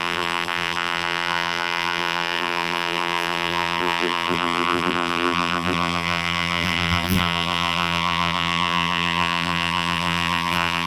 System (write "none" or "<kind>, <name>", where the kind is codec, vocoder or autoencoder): vocoder, BigVGAN v2